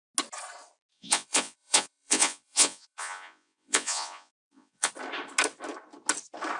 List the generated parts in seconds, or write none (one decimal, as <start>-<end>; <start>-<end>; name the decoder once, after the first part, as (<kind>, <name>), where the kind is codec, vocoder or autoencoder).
0.9-4.9 (vocoder, Vocos)